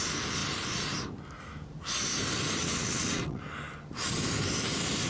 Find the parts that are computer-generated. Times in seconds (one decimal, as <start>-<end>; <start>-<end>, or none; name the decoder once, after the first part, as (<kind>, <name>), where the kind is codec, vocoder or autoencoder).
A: 2.6-3.4 (vocoder, WaveNeXt)

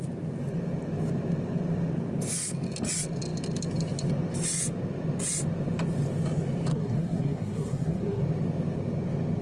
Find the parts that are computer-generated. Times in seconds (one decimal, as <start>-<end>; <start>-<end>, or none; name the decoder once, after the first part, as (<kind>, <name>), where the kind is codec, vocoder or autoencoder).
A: 6.7-8.2 (codec, SNAC)

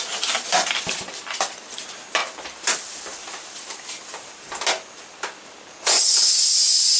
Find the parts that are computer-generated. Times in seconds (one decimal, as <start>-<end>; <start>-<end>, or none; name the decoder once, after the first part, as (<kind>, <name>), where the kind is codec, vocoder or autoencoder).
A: 2.2-4.5 (vocoder, BigVGAN v2)

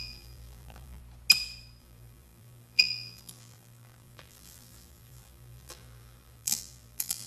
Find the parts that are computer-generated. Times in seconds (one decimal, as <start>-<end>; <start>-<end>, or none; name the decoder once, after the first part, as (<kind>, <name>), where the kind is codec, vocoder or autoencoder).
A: 0.0-1.0 (vocoder, BigVGAN v2); 1.8-7.3

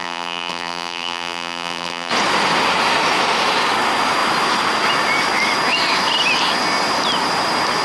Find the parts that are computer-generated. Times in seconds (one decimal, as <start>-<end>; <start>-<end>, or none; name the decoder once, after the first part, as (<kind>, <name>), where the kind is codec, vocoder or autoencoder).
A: 0.0-2.1 (vocoder, BigVGAN v2)

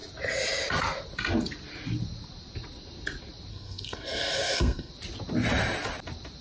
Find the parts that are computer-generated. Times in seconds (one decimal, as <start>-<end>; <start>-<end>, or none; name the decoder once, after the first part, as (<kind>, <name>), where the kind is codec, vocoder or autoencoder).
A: 3.5-4.9 (codec, SNAC)

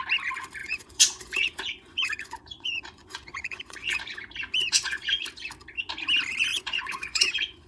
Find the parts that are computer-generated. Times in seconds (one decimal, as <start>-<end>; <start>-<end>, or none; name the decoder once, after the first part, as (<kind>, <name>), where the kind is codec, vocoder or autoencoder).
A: 0.6-4.0 (vocoder, Vocos); 4.6-5.2; 6.5-7.7

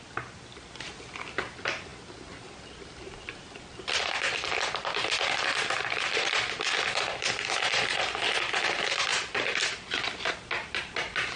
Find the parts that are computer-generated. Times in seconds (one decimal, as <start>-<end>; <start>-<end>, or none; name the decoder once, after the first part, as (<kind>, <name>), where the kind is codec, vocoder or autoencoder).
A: none